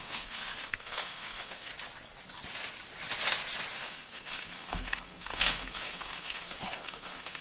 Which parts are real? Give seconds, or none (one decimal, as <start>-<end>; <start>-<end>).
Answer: 1.7-3.7